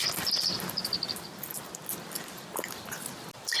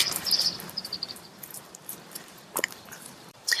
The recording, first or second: first